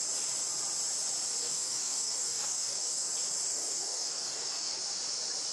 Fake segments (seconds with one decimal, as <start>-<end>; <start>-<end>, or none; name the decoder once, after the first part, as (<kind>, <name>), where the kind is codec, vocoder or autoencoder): 1.4-3.1 (codec, DAC); 3.5-4.8